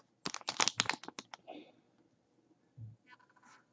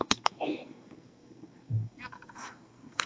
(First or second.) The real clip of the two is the first